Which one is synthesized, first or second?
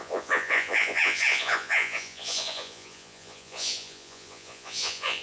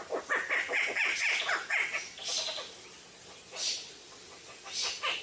first